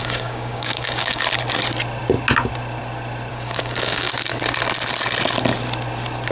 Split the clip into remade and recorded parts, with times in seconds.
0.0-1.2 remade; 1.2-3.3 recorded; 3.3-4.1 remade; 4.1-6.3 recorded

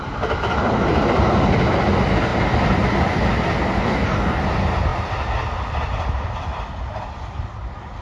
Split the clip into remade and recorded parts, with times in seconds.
0.0-3.8 recorded; 3.8-4.4 remade; 4.4-8.0 recorded